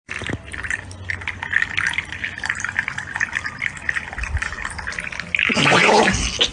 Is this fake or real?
real